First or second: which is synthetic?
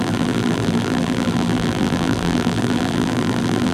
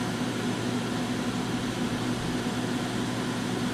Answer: first